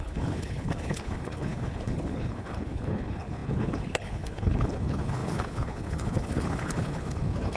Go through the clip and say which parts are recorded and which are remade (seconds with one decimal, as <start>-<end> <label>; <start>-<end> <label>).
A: 0.0-7.6 remade